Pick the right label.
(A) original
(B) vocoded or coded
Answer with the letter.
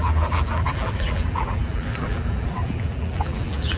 B